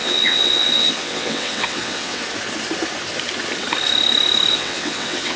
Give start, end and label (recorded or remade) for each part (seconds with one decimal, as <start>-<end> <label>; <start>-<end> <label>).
0.0-2.2 remade; 2.2-4.5 recorded; 4.5-5.4 remade